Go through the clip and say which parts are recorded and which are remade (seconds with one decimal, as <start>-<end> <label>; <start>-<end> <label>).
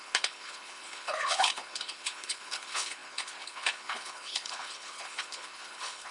0.0-6.1 remade